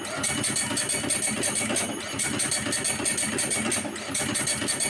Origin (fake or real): real